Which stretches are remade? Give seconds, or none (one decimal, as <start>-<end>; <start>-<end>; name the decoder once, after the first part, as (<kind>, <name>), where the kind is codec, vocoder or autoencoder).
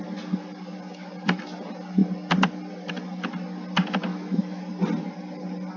4.1-4.6 (autoencoder, DAC-VAE)